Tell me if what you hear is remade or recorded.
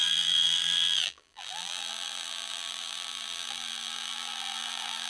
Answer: remade